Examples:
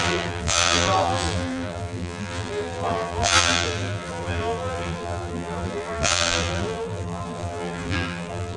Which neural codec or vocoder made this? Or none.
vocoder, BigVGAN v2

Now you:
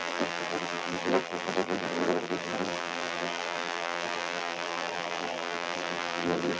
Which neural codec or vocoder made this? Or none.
vocoder, BigVGAN v2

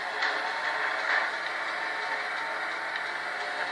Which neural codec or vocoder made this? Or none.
none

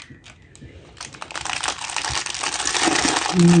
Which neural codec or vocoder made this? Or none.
none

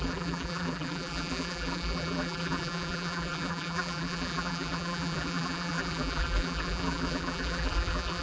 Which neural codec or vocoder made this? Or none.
vocoder, BigVGAN v2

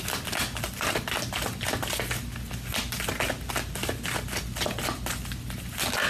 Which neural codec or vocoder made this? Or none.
none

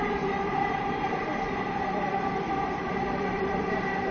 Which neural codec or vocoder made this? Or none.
vocoder, BigVGAN v2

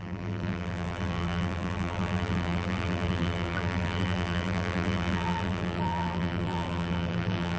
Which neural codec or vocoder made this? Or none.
vocoder, BigVGAN v2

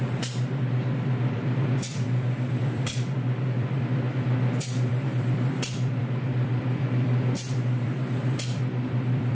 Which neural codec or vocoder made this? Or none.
vocoder, BigVGAN v2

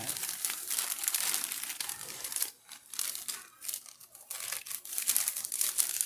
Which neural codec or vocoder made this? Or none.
vocoder, BigVGAN v2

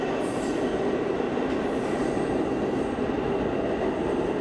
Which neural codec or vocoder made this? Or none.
none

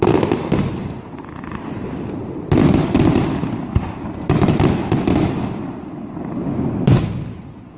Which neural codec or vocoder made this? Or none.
none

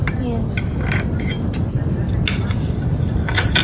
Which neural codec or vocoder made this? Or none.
none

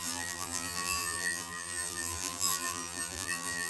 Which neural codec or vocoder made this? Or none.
vocoder, BigVGAN v2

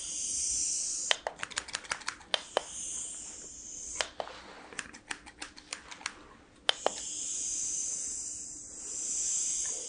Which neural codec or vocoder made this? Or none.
none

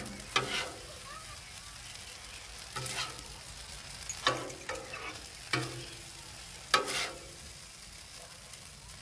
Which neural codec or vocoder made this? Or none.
none